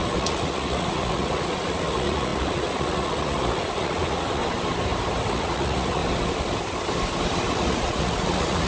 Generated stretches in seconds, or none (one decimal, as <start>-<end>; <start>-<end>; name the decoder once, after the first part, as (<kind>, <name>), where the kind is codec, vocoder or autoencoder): 0.0-4.4 (vocoder, Vocos); 5.3-6.0; 7.5-8.7